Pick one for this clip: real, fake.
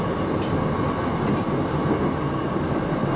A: real